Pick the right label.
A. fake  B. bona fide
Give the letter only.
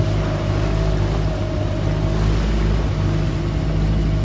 B